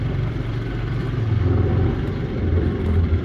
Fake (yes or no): yes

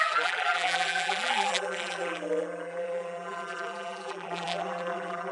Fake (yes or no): yes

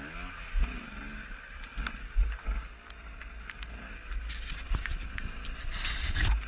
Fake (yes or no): no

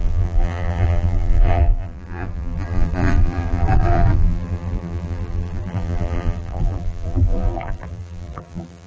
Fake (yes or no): yes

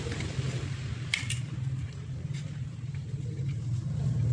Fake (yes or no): yes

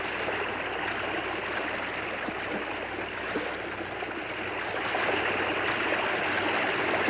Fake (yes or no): no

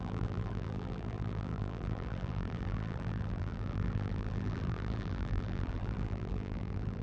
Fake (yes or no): yes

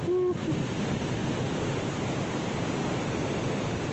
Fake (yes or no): no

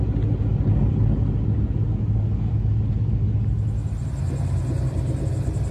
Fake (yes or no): no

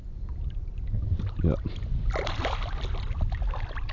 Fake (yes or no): yes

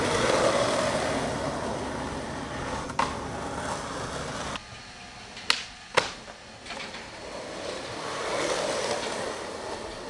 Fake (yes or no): no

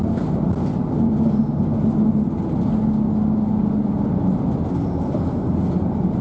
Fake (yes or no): no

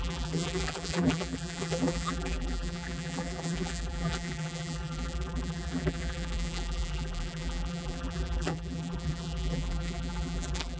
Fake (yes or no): yes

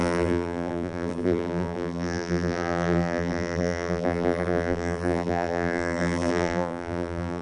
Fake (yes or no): yes